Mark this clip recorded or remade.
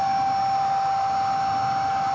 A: recorded